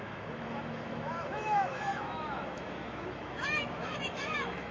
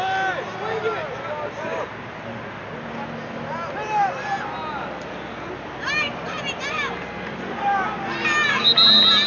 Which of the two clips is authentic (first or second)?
second